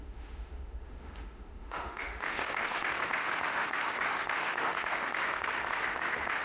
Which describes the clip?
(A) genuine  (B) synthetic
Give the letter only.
B